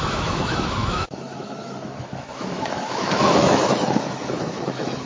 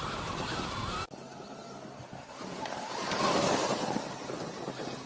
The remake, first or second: first